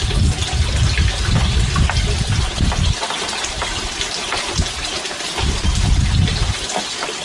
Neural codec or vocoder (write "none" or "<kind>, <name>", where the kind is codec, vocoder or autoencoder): none